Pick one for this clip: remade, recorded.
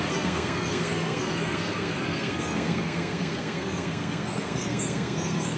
remade